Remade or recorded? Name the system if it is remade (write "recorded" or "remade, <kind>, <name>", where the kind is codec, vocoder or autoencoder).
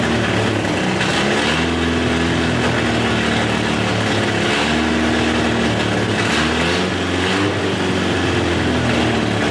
recorded